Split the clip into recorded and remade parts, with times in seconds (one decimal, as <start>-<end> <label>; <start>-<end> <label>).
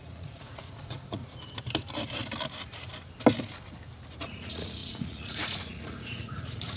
0.0-1.2 remade; 1.2-4.2 recorded; 4.2-6.8 remade